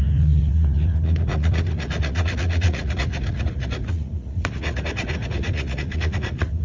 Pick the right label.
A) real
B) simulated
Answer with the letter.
B